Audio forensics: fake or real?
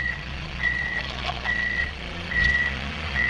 fake